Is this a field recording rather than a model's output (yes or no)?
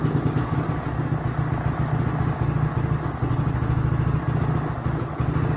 yes